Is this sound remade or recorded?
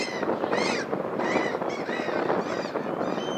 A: remade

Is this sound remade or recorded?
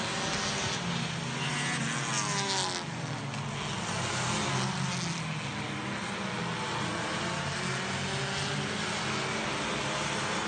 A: recorded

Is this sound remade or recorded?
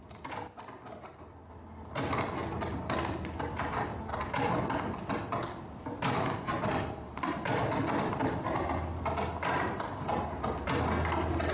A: recorded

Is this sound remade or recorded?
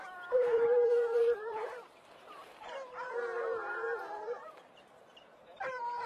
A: remade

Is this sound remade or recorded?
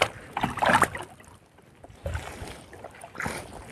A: recorded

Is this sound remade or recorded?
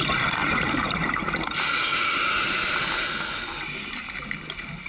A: recorded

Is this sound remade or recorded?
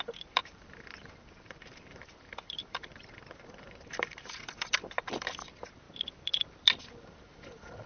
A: remade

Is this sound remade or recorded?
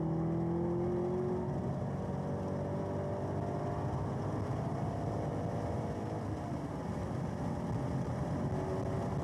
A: recorded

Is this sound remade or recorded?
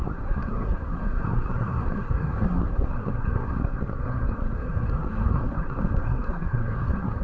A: remade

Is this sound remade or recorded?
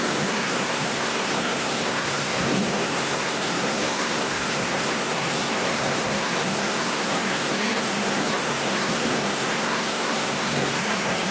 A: remade